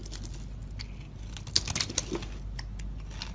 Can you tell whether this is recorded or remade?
recorded